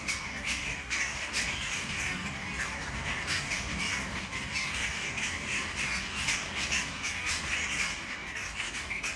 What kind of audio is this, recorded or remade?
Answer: remade